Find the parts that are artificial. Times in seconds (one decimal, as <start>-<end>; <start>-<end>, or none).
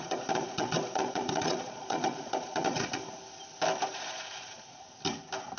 0.0-3.0; 3.9-4.8